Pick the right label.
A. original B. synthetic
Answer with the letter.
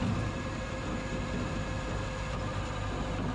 A